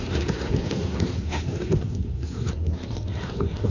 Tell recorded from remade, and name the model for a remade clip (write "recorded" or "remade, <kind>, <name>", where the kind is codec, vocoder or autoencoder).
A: remade, codec, SNAC